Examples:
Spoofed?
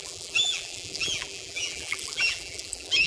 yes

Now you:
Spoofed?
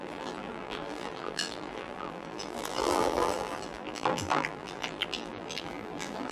yes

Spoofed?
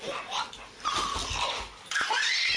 no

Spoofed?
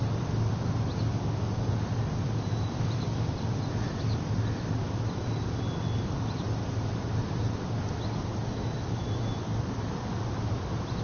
yes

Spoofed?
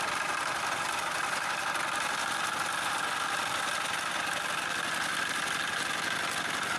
no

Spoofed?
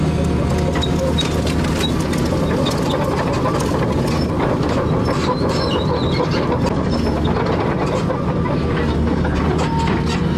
no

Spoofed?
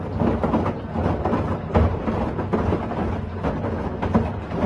no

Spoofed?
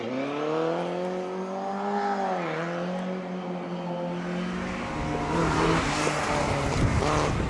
no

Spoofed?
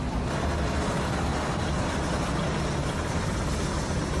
no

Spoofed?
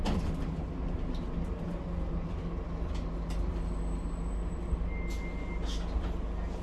no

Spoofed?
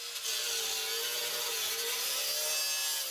no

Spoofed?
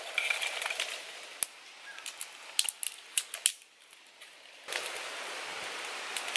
no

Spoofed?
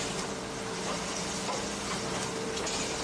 no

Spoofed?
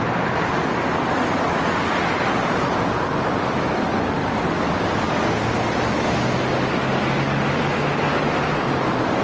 no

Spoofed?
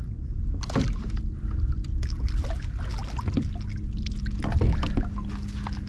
no